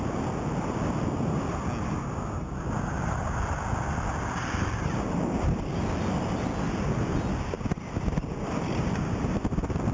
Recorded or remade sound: recorded